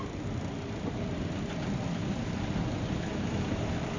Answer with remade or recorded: recorded